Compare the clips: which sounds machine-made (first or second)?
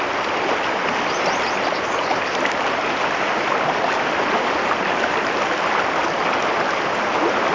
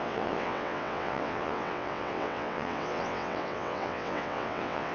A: second